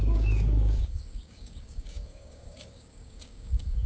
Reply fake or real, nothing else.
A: fake